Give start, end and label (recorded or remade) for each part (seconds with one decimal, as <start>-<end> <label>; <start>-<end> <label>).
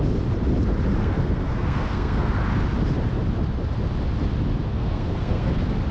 0.0-1.0 recorded; 1.0-2.3 remade; 2.3-4.7 recorded; 4.7-5.5 remade; 5.5-5.9 recorded